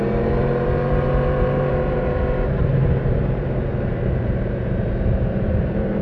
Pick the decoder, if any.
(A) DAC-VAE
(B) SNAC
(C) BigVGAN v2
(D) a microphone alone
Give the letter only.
C